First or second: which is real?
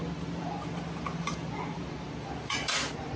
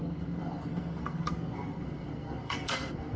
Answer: first